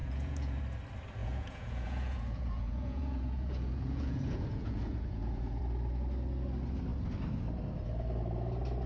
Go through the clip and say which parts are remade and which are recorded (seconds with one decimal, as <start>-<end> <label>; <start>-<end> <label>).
0.0-0.6 remade; 0.6-1.2 recorded; 1.2-5.6 remade; 5.6-8.9 recorded